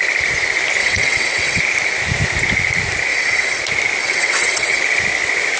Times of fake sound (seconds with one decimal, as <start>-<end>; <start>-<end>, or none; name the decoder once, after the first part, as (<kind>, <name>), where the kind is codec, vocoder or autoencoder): 0.8-1.6 (vocoder, WaveNeXt); 3.1-3.6; 4.0-4.8